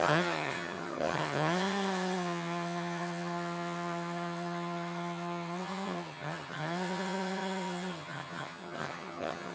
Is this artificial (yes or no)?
yes